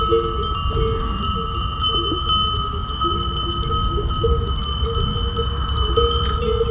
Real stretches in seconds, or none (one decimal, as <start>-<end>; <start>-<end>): 0.0-6.7